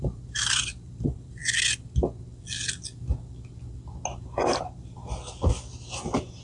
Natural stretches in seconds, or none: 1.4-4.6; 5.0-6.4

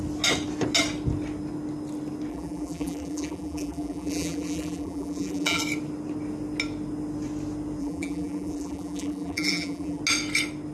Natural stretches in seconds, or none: 0.0-2.3; 5.6-7.8; 10.0-10.7

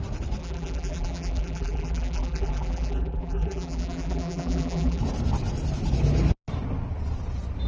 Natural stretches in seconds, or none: 0.0-0.4; 5.0-7.7

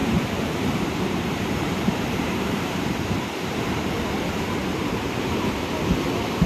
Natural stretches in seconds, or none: 3.9-4.7; 5.6-6.5

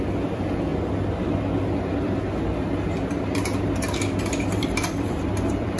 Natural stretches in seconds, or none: 0.7-4.2

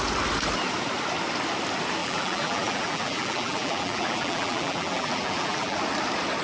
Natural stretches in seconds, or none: 0.0-2.0; 5.8-6.4